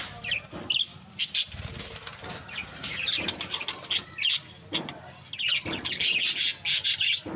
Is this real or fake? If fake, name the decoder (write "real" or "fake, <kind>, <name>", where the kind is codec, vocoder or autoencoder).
real